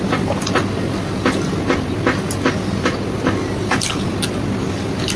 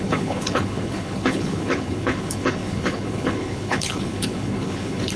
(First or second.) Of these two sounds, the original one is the first